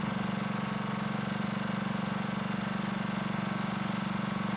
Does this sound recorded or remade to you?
recorded